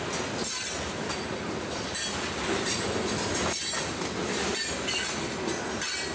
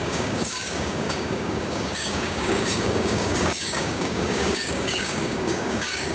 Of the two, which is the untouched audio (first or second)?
first